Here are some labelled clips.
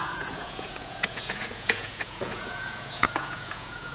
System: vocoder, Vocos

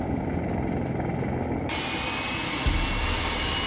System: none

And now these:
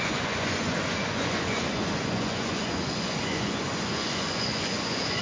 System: vocoder, Vocos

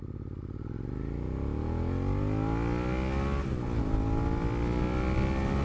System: none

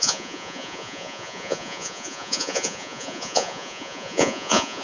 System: vocoder, Vocos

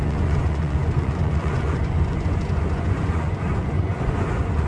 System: vocoder, Vocos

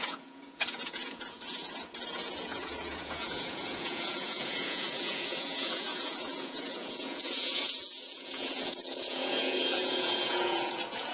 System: vocoder, Vocos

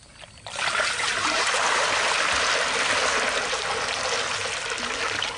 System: none